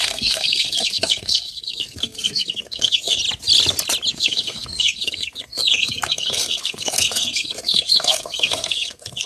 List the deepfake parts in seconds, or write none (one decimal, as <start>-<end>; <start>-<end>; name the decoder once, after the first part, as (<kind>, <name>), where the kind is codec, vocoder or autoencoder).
0.0-3.2 (codec, SNAC); 4.1-9.3